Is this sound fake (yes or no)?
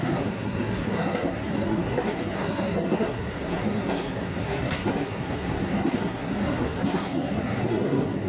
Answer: yes